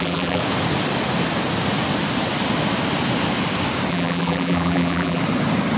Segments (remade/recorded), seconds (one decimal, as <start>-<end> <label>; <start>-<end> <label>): 0.0-0.4 remade; 0.4-3.9 recorded; 3.9-5.2 remade; 5.2-5.8 recorded